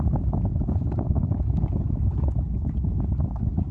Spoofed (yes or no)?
yes